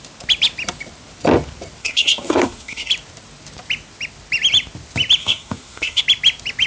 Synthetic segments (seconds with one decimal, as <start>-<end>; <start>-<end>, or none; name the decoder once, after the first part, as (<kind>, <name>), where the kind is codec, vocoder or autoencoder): 1.8-2.9 (codec, SNAC); 5.2-6.0